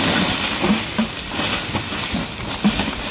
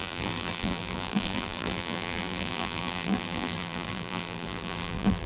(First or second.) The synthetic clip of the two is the second